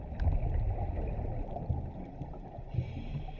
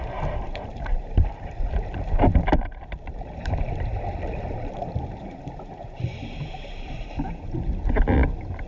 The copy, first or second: second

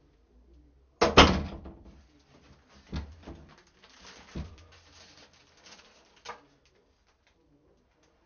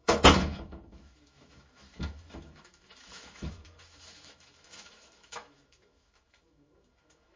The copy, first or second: second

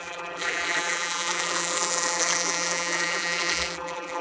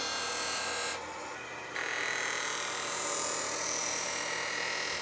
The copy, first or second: first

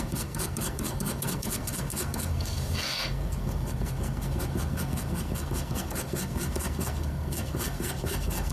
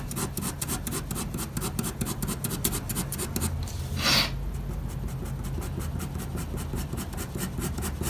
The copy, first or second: first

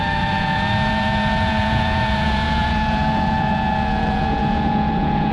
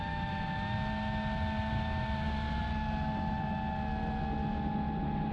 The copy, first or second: first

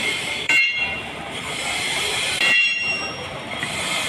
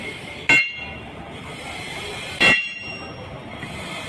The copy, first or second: first